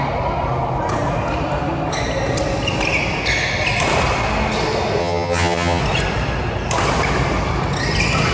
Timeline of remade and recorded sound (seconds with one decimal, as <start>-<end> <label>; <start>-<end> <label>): 0.0-5.0 recorded; 5.0-5.8 remade; 5.8-8.3 recorded